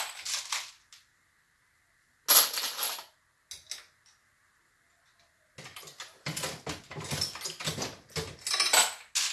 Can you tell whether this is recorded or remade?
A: recorded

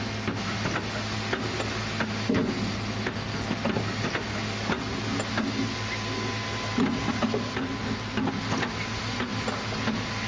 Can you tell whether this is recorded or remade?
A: recorded